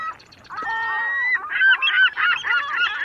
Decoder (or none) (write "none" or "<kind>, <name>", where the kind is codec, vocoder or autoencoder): none